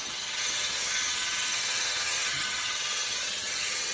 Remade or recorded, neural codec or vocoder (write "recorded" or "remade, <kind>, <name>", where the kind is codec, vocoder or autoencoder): remade, vocoder, HiFi-GAN